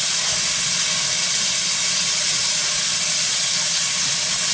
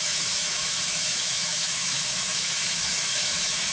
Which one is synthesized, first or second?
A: second